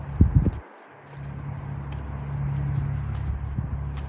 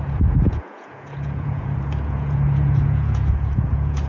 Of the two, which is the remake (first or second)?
second